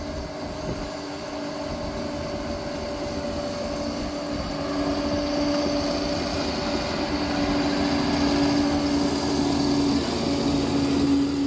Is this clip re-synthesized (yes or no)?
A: no